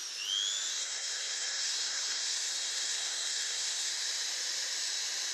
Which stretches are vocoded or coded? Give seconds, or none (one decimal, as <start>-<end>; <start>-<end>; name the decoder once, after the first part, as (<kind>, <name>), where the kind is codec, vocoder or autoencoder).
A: 0.7-3.9 (codec, SNAC)